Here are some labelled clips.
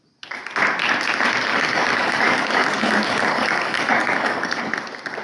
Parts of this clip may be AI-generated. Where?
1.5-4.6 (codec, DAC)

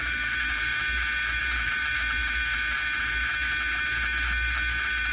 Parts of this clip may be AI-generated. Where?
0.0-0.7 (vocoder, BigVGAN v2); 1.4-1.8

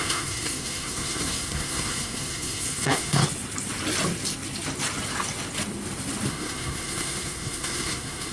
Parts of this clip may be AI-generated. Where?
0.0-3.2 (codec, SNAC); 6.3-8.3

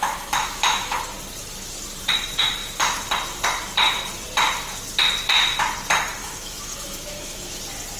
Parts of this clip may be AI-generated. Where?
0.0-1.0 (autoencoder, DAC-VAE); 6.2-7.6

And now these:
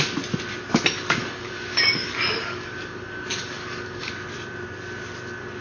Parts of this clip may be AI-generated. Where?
1.2-4.1 (codec, DAC)

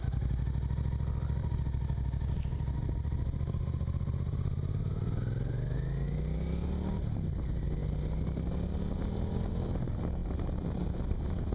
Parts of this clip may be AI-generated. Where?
none

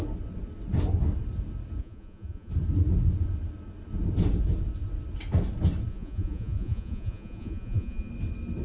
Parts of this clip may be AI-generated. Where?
1.8-2.5 (vocoder, Vocos); 5.9-8.1

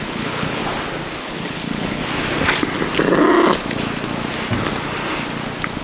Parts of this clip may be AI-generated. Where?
0.0-0.6 (codec, HILCodec); 1.2-2.0